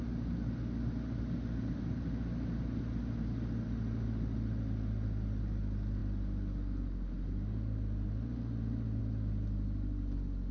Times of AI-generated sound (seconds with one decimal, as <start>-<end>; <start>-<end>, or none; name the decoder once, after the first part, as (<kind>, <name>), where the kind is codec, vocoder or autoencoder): none

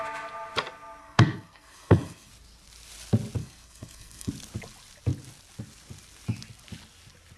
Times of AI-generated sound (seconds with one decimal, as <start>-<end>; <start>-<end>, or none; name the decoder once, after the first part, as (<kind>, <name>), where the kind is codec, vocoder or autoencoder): 1.0-2.3 (codec, SNAC); 3.4-4.3

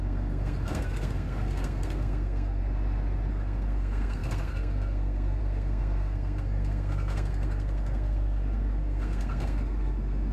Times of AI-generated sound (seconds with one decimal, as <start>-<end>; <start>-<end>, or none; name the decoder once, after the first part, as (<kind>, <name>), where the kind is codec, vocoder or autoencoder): 0.0-2.6 (codec, SNAC); 3.3-10.3

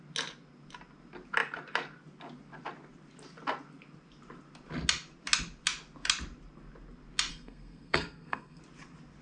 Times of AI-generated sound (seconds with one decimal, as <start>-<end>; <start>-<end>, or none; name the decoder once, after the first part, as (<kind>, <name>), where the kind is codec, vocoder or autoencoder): 7.3-8.6 (codec, SNAC)

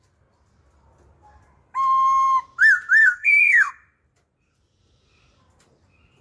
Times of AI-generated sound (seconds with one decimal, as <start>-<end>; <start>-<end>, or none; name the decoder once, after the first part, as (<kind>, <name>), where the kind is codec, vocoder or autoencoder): 3.0-3.7 (codec, SNAC)

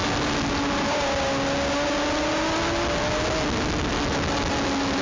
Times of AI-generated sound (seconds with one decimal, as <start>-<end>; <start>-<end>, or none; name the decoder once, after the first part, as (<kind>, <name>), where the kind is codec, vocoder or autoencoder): none

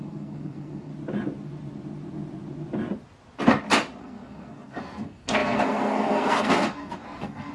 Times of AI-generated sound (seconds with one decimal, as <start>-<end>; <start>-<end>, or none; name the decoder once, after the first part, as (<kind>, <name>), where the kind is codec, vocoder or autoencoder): 0.0-0.9 (codec, SNAC); 4.0-7.5

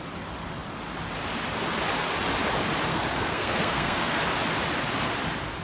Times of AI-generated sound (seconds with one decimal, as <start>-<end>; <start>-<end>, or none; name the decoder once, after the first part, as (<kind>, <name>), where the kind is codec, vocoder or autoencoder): 2.9-4.2 (codec, SNAC)